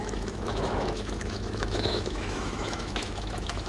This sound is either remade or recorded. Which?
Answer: remade